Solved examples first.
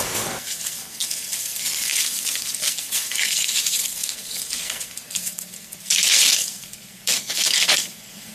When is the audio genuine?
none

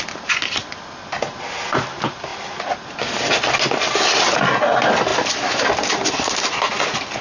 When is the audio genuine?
0.0-5.1; 6.1-7.2

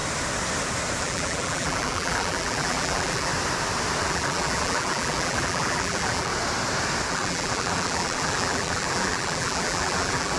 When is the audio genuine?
0.0-1.0; 3.3-4.0; 6.3-7.1